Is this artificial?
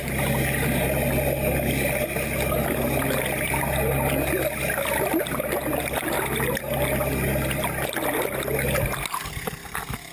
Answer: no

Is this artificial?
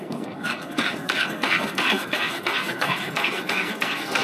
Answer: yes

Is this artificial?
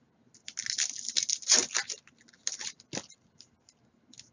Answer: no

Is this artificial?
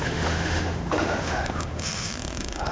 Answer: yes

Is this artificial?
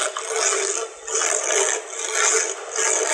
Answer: no